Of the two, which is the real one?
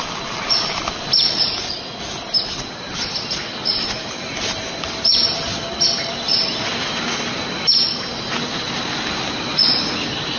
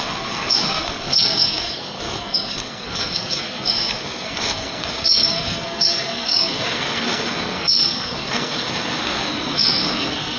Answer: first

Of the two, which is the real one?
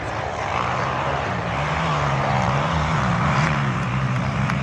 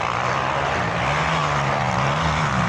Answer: second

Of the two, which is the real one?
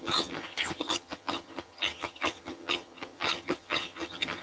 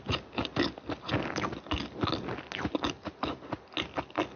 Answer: second